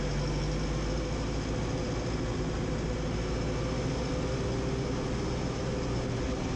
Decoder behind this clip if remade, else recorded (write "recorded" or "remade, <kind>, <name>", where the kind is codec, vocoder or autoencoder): recorded